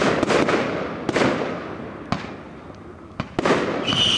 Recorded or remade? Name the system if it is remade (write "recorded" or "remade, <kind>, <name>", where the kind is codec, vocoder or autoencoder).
recorded